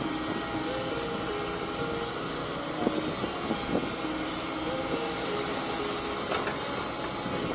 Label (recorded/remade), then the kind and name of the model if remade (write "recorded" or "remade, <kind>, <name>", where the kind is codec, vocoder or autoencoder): recorded